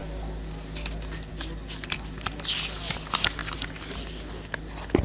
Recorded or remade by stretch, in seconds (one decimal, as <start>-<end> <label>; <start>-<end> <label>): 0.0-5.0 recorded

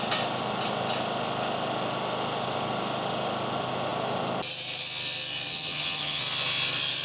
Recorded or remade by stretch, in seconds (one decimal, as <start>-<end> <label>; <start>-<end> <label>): 0.0-5.5 recorded; 5.5-6.2 remade; 6.2-7.0 recorded

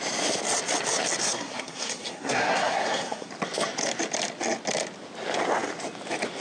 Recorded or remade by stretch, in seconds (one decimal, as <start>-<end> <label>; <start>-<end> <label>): 0.0-1.2 recorded; 1.2-3.3 remade; 3.3-6.4 recorded

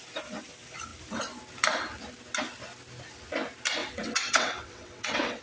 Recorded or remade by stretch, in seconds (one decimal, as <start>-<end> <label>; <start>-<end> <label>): 0.0-3.8 recorded; 3.8-5.4 remade